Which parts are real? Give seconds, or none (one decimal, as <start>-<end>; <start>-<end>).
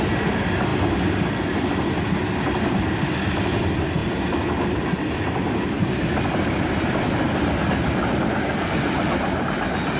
0.0-10.0